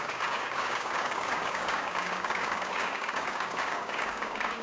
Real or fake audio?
fake